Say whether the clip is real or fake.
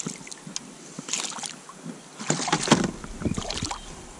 real